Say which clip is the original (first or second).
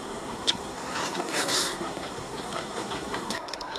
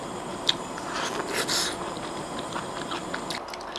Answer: second